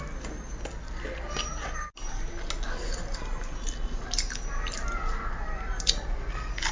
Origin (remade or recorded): recorded